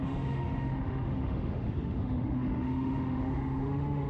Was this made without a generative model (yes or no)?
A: no